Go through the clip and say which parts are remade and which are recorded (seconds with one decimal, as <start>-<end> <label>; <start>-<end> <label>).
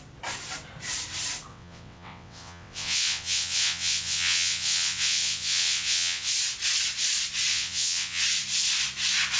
0.0-1.5 recorded; 1.5-6.3 remade; 6.3-7.5 recorded; 7.5-8.2 remade; 8.2-9.4 recorded